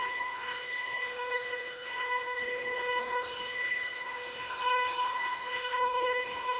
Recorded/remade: remade